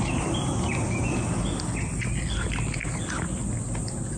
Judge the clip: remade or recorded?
recorded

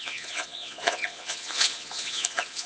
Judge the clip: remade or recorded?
remade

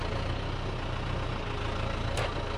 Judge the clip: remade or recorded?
recorded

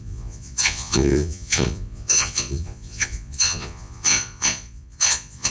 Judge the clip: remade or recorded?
remade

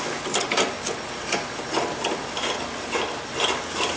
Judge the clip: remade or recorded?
recorded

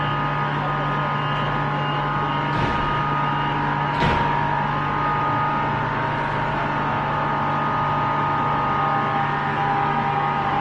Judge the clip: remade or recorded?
recorded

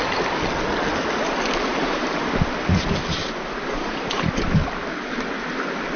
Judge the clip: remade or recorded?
recorded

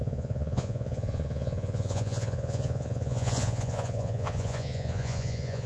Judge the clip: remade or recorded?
remade